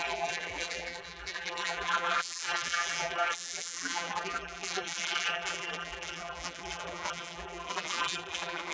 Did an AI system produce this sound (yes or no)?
yes